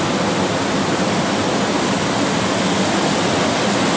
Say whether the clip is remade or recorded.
recorded